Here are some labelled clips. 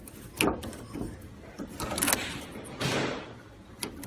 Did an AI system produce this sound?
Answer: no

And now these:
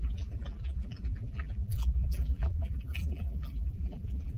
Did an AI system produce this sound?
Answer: yes